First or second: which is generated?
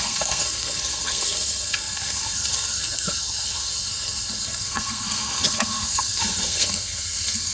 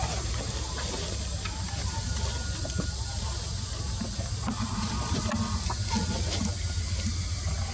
first